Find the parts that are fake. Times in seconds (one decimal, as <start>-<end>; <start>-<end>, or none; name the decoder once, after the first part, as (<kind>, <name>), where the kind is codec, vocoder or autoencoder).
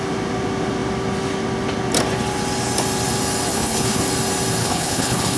3.5-4.0 (codec, HILCodec); 4.6-5.4